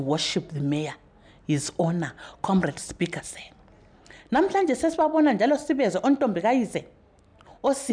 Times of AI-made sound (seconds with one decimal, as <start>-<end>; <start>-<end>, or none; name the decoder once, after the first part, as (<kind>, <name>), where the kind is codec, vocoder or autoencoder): none

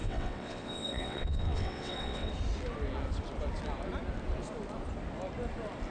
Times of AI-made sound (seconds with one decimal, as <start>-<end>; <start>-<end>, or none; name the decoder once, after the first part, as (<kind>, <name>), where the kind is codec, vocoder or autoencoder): 0.0-2.3 (vocoder, WaveNeXt)

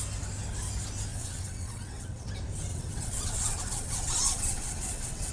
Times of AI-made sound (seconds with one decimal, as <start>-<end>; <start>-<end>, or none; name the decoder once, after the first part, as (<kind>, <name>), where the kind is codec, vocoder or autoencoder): 1.1-2.3 (vocoder, WaveNeXt); 2.7-5.3